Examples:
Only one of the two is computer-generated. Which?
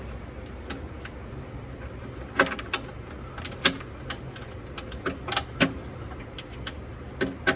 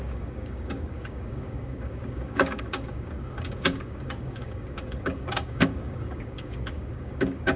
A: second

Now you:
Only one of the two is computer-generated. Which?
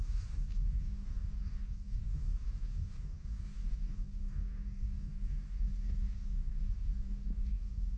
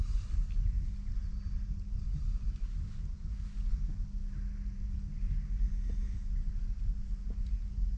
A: first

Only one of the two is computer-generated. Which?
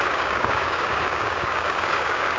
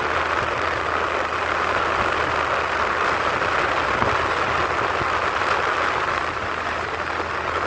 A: first